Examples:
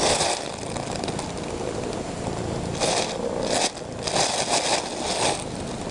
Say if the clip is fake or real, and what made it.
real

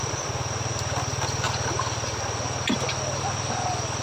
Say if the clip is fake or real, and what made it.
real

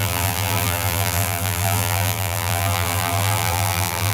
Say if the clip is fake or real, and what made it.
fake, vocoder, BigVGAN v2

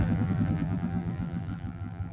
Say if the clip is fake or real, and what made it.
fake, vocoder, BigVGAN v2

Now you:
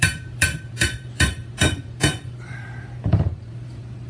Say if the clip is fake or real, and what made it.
fake, vocoder, BigVGAN v2